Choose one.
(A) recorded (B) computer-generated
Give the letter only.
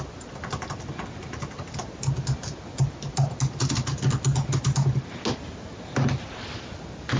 A